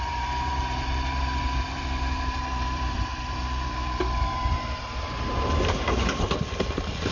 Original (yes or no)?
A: no